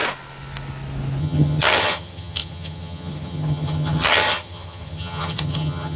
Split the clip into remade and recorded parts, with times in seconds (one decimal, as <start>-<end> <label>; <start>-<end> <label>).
0.0-1.2 recorded; 1.2-6.0 remade